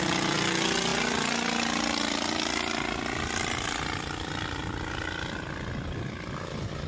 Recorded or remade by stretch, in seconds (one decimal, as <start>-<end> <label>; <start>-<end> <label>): 0.0-6.9 recorded